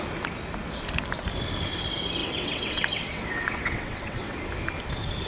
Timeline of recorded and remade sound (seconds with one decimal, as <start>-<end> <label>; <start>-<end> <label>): 0.0-2.2 recorded; 2.2-4.4 remade; 4.4-5.3 recorded